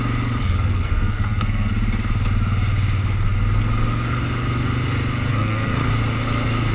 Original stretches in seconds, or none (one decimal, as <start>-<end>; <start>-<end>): 0.0-0.4; 1.7-5.3; 5.9-6.7